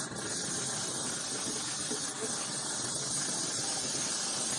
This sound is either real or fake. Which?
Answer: real